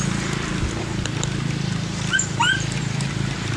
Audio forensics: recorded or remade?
remade